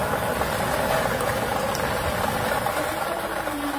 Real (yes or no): yes